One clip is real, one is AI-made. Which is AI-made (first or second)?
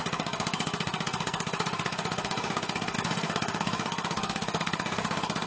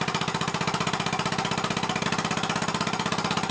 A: first